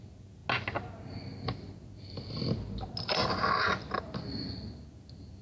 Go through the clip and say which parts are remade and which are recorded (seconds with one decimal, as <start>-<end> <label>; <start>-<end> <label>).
0.0-5.4 recorded

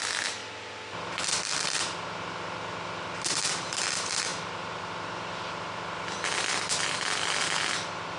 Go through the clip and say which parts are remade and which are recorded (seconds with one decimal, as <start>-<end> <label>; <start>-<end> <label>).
0.0-8.2 recorded

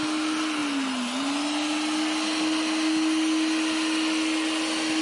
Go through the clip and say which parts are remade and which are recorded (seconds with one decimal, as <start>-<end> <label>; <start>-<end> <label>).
0.0-5.0 recorded

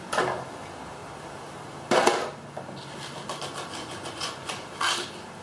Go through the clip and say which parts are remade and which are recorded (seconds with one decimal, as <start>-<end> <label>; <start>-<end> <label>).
0.0-3.8 recorded; 3.8-4.7 remade; 4.7-5.4 recorded

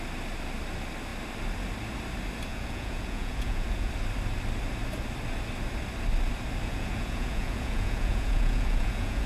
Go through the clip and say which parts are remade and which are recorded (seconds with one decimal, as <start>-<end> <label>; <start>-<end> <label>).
0.0-2.5 recorded; 2.5-3.9 remade; 3.9-6.6 recorded; 6.6-9.3 remade